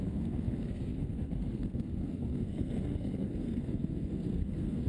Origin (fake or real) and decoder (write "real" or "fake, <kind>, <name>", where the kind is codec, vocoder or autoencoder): fake, codec, SNAC